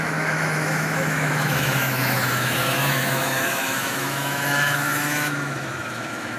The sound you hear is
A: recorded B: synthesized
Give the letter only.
B